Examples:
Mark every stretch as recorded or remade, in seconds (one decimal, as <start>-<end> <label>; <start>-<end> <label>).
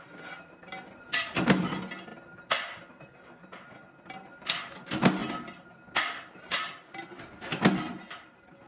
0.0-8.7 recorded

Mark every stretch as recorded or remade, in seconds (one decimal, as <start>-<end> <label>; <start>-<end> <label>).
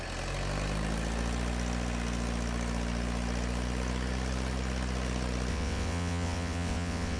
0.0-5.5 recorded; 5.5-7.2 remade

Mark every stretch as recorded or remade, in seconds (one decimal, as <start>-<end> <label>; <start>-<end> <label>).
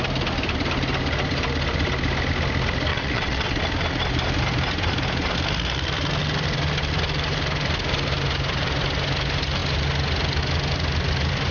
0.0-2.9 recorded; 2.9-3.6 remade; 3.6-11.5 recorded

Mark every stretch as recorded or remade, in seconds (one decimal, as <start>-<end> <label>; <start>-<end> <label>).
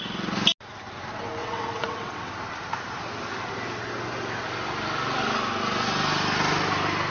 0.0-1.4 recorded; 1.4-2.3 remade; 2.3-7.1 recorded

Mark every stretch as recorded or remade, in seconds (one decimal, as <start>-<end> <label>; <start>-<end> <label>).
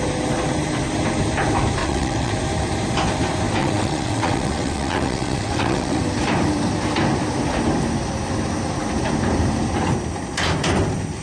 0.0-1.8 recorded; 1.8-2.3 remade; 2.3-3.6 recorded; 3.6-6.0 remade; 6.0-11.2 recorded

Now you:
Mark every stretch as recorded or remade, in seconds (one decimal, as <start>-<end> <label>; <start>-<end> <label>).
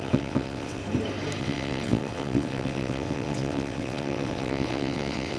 0.0-0.8 remade; 0.8-1.4 recorded; 1.4-5.4 remade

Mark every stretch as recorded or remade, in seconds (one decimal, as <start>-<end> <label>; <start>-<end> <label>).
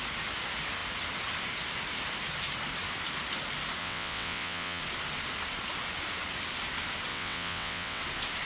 0.0-3.8 recorded; 3.8-4.8 remade; 4.8-7.1 recorded; 7.1-8.0 remade; 8.0-8.5 recorded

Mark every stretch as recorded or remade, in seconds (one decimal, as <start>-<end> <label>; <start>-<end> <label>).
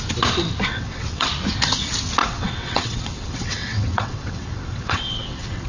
0.0-0.7 recorded; 0.7-1.3 remade; 1.3-2.2 recorded; 2.2-5.7 remade